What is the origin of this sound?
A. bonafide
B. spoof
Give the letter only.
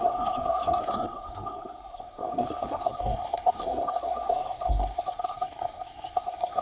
B